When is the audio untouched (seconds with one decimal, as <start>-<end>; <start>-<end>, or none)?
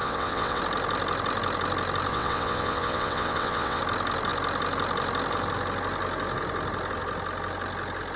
0.6-2.1; 3.8-8.2